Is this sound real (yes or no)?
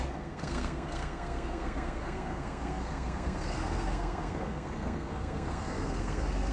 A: no